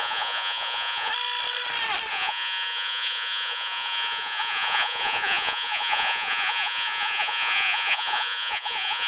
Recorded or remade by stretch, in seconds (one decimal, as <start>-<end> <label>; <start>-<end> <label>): 0.0-1.1 remade; 1.1-2.1 recorded; 2.1-9.1 remade

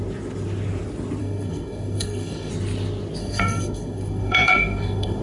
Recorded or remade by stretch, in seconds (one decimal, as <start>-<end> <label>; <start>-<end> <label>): 0.0-1.2 recorded; 1.2-2.5 remade; 2.5-3.2 recorded; 3.2-5.2 remade

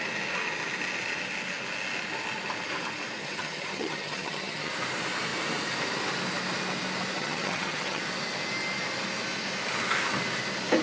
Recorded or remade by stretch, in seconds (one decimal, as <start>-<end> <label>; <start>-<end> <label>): 0.0-3.2 recorded; 3.2-4.7 remade; 4.7-7.2 recorded; 7.2-8.0 remade; 8.0-10.8 recorded

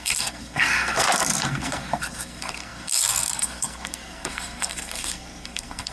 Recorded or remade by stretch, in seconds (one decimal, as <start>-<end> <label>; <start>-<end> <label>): 0.0-5.9 remade

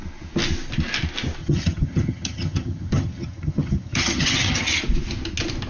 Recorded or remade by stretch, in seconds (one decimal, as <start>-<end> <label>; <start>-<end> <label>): 0.0-1.4 recorded; 1.4-4.8 remade; 4.8-5.7 recorded

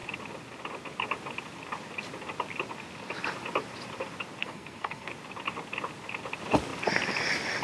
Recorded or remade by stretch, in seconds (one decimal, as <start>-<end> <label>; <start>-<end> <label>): 0.0-4.4 recorded; 4.4-5.1 remade; 5.1-7.6 recorded